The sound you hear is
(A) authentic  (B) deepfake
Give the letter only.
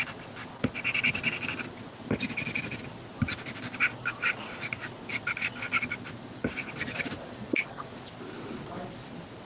A